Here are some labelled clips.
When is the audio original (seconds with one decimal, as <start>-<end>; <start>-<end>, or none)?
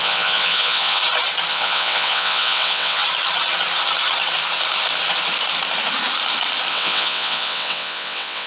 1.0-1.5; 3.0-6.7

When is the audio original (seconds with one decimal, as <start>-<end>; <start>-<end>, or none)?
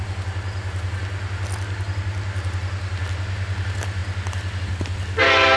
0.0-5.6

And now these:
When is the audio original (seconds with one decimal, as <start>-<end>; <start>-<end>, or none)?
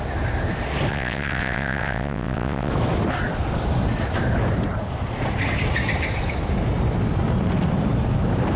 0.0-0.9; 2.7-8.6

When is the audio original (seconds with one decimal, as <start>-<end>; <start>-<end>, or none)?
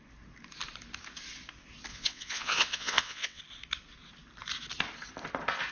0.0-1.9; 3.4-5.7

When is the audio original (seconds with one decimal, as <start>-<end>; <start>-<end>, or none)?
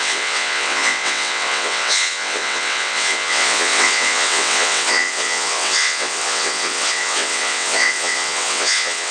none